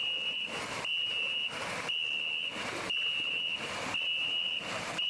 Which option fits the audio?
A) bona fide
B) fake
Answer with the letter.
A